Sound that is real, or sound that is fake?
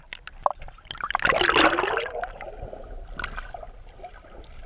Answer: real